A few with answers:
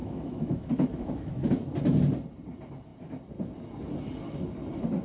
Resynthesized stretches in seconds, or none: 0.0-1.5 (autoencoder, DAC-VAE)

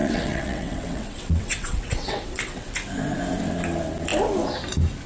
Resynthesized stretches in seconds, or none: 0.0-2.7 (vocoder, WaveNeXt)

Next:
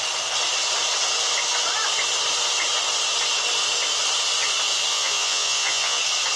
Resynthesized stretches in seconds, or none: 4.9-6.0 (vocoder, Vocos)

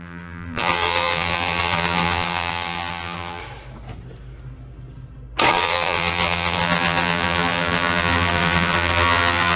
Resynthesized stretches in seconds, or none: 0.0-3.4 (vocoder, BigVGAN v2); 5.5-9.6

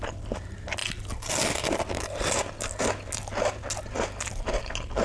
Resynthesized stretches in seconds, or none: none

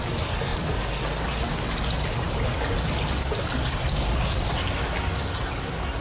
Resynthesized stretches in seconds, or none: none

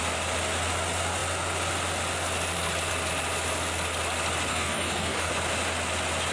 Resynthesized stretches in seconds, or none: 4.5-5.3 (codec, DAC)

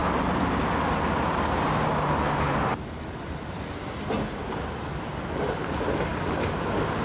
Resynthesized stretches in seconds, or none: none